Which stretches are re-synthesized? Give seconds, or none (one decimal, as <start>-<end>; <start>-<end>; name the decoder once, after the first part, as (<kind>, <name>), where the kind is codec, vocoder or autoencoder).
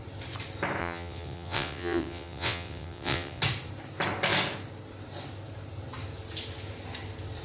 0.8-3.4 (vocoder, WaveNeXt)